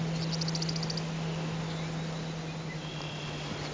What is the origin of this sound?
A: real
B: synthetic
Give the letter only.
A